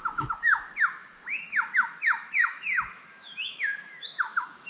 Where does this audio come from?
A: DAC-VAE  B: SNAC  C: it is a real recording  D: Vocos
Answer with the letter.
A